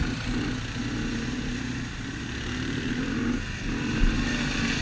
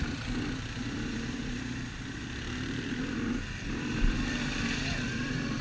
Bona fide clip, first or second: first